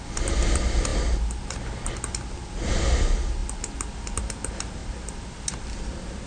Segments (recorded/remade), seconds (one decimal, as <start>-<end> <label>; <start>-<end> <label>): 0.0-6.3 recorded